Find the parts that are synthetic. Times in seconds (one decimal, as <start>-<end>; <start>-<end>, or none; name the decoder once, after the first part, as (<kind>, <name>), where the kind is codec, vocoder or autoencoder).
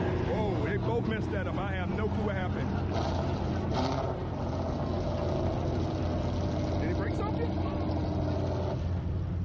1.9-4.5 (vocoder, BigVGAN v2)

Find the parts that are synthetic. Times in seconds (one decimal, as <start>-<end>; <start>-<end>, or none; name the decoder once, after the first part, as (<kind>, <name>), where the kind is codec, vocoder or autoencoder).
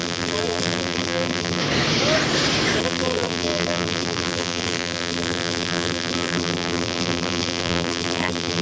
0.0-1.6 (vocoder, BigVGAN v2); 2.8-8.6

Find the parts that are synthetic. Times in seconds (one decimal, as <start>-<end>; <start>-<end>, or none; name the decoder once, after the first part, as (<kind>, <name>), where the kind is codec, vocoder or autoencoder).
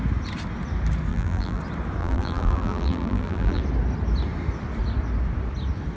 1.1-1.6 (vocoder, BigVGAN v2); 2.0-3.6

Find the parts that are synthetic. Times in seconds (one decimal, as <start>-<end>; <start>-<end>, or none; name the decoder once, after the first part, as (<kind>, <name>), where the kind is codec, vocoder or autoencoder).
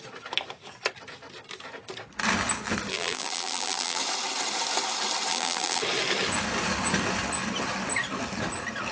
2.9-4.0 (vocoder, BigVGAN v2); 5.3-5.8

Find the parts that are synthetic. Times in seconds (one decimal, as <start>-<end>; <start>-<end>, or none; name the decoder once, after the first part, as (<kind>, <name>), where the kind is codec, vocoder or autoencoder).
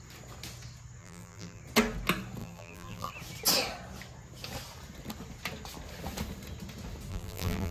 1.0-1.6 (vocoder, BigVGAN v2); 2.4-3.1; 7.1-7.7